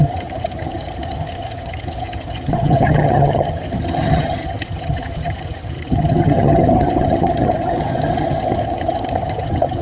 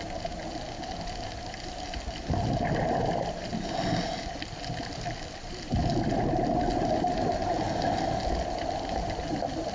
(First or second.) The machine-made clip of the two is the first